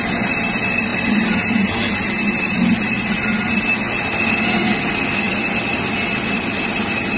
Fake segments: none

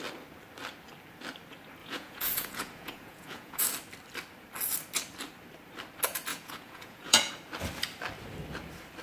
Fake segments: 1.8-3.6 (vocoder, Vocos); 6.3-7.3

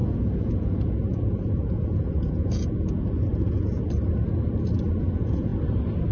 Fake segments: 0.0-3.3 (vocoder, Vocos); 5.0-5.5

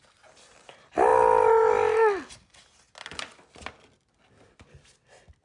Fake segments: none

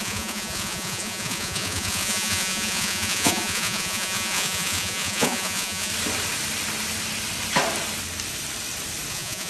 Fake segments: 0.0-5.9 (vocoder, Vocos); 9.1-9.5